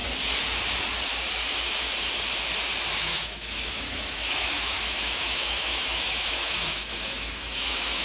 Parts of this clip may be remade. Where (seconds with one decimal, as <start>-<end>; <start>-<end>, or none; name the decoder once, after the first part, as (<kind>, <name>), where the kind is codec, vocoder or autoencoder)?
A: 2.9-8.0 (autoencoder, DAC-VAE)